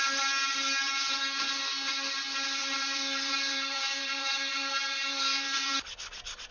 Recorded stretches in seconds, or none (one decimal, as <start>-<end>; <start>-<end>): 0.0-2.6; 5.7-6.5

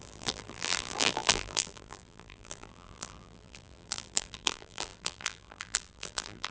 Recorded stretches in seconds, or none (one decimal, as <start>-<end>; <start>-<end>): none

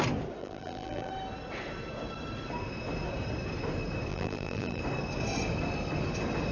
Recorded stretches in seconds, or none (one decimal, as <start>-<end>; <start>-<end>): 0.0-0.4; 1.1-4.1; 4.8-6.5

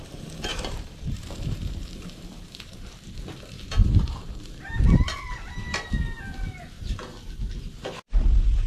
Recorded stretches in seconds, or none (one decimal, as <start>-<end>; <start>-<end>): 0.0-0.5; 2.7-3.8; 4.6-8.7

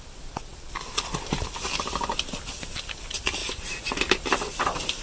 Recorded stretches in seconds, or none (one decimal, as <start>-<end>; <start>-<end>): 0.0-3.4; 4.6-5.0

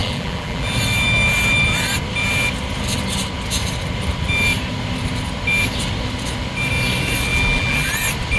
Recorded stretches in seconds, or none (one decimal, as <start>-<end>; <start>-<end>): 0.7-7.3; 7.9-8.4